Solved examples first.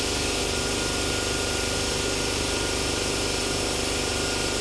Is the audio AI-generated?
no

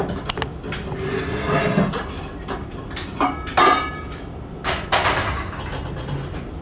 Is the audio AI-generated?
no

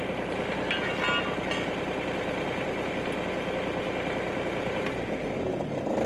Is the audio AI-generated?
no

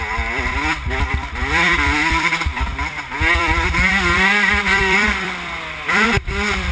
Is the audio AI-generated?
yes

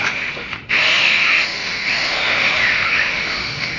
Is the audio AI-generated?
yes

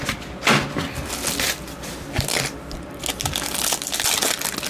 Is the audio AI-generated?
no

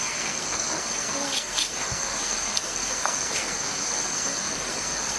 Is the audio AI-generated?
yes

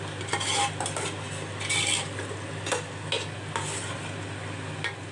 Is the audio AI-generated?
no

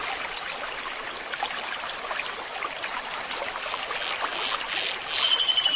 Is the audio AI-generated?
no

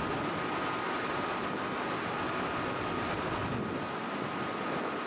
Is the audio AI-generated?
no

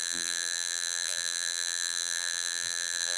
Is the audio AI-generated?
yes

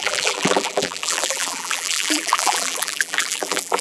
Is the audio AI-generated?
yes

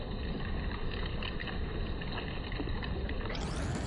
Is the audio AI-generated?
no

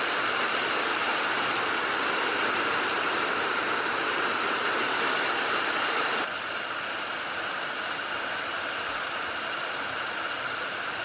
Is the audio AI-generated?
yes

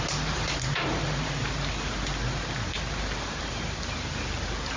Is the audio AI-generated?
no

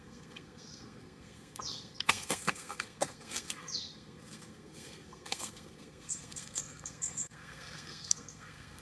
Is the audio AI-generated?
yes